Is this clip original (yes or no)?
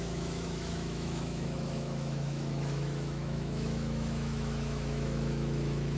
no